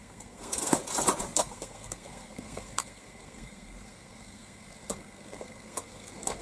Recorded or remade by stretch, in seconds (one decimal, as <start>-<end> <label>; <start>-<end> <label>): 0.0-0.8 remade; 0.8-1.4 recorded; 1.4-6.4 remade